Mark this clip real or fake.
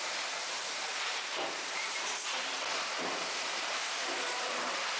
fake